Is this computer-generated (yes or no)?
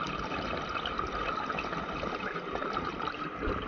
no